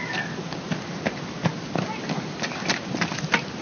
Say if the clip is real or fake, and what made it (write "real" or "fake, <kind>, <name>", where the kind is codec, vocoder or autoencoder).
real